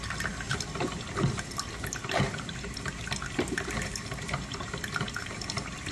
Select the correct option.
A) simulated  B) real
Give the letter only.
B